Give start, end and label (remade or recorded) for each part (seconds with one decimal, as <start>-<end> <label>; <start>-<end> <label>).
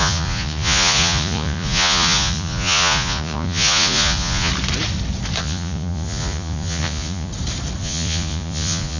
0.0-4.5 remade; 4.5-5.4 recorded; 5.4-7.3 remade; 7.3-7.8 recorded; 7.8-9.0 remade